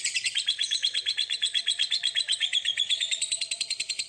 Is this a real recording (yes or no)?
no